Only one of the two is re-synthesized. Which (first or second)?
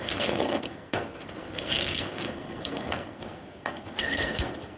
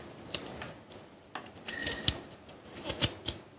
first